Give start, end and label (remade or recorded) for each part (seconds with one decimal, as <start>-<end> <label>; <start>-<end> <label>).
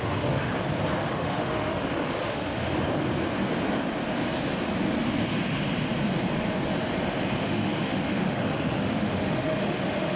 0.0-0.5 remade; 0.5-1.1 recorded; 1.1-2.5 remade; 2.5-7.4 recorded; 7.4-10.2 remade